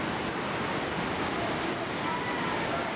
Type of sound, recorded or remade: recorded